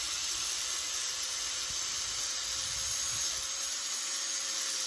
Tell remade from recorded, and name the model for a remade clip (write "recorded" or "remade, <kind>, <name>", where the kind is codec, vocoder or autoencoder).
recorded